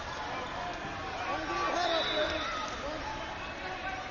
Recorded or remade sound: recorded